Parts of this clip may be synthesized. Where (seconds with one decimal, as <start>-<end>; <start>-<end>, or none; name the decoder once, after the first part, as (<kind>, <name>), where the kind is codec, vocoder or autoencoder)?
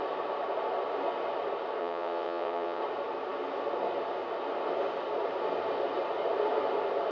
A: 1.8-2.8 (vocoder, WaveNeXt)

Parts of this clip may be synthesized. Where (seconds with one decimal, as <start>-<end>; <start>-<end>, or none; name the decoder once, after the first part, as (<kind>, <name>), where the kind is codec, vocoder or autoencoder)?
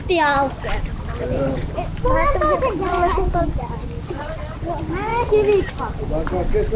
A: none